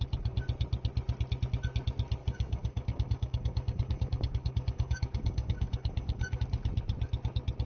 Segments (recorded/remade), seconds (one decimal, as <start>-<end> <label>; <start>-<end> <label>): 0.0-2.2 recorded; 2.2-6.4 remade; 6.4-7.6 recorded